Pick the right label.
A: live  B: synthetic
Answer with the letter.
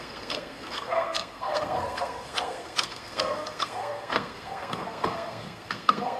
B